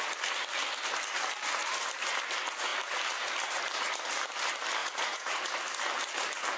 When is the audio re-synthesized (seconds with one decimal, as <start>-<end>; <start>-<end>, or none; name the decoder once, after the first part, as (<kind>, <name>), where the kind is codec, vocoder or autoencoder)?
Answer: 4.8-5.4 (vocoder, Vocos)